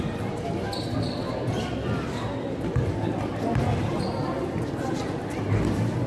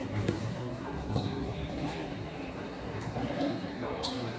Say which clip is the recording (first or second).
first